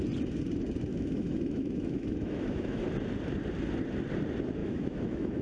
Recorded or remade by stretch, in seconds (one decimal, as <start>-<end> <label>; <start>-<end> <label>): 0.0-0.9 recorded; 0.9-2.8 remade; 2.8-4.6 recorded; 4.6-5.4 remade